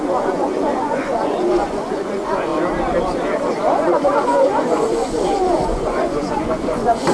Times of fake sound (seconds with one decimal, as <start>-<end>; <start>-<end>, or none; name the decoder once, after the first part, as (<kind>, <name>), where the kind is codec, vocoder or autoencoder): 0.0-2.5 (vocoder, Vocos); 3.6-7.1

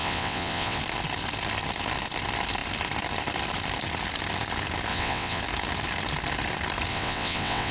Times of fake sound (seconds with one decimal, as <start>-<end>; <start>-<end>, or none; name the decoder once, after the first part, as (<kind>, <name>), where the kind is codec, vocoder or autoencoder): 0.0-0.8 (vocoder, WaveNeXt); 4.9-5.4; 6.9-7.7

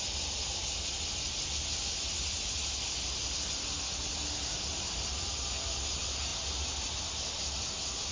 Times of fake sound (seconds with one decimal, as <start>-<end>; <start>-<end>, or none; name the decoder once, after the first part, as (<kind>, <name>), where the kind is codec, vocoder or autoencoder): none

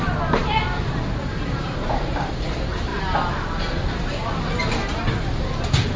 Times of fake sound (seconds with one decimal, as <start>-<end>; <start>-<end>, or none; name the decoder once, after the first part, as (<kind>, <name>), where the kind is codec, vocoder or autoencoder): none